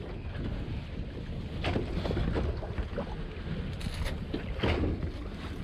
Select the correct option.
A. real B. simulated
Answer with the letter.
A